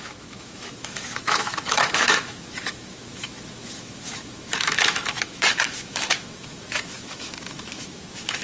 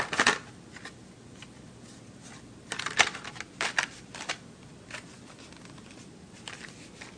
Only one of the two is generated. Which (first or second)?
first